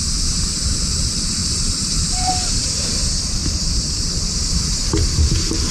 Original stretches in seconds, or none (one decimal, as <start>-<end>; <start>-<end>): 0.0-5.7